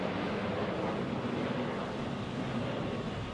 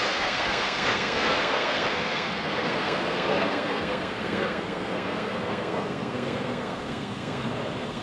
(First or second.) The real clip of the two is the first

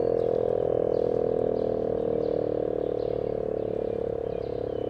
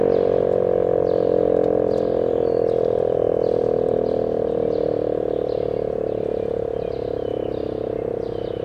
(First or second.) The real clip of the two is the first